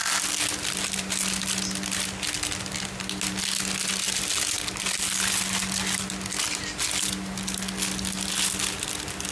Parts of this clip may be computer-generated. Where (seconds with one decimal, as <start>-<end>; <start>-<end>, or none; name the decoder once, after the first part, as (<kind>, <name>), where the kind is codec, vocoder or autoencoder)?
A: none